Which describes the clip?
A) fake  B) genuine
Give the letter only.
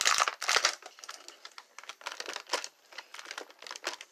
B